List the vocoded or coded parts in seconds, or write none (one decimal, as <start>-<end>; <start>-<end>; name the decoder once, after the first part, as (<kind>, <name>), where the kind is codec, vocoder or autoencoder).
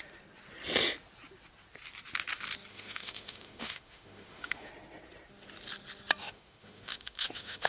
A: 2.7-4.7 (autoencoder, DAC-VAE); 6.2-7.7